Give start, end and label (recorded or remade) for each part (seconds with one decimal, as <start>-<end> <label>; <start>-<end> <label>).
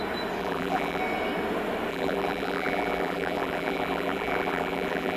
0.0-0.4 recorded; 0.4-1.0 remade; 1.0-1.9 recorded; 1.9-5.2 remade